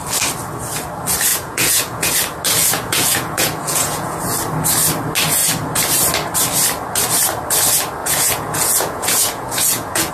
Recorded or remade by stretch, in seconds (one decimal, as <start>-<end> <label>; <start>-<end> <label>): 0.0-1.3 recorded; 1.3-2.1 remade; 2.1-2.6 recorded; 2.6-4.2 remade; 4.2-8.0 recorded; 8.0-10.1 remade